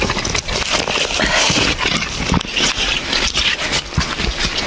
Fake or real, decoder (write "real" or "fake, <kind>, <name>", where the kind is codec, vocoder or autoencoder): real